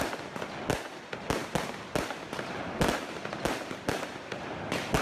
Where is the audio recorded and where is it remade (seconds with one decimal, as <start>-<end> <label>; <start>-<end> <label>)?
0.0-5.0 recorded